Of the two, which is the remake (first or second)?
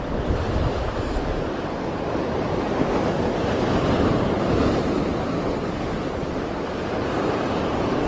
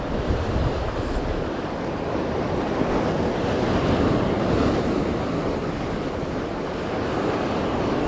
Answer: first